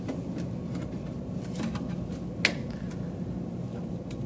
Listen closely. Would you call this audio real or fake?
real